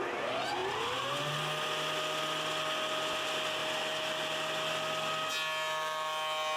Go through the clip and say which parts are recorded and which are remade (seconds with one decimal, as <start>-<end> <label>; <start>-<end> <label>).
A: 0.0-6.6 recorded